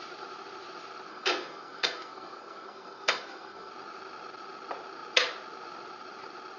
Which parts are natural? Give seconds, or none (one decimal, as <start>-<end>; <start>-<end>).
0.0-1.1; 3.7-6.6